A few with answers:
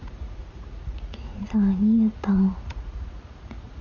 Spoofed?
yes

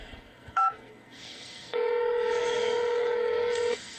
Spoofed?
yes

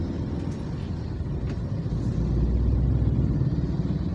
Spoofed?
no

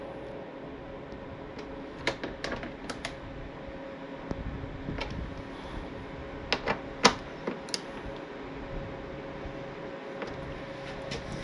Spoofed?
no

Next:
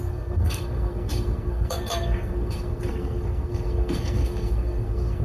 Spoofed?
yes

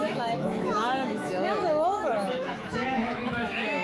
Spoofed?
yes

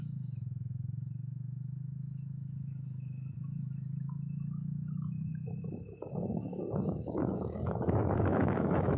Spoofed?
yes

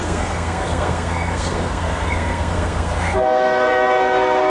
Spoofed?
yes